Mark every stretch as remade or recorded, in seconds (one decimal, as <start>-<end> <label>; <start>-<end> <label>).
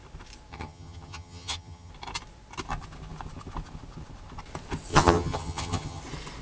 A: 0.0-0.5 recorded; 0.5-1.9 remade; 1.9-4.9 recorded; 4.9-6.0 remade; 6.0-6.4 recorded